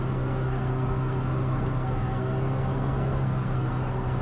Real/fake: fake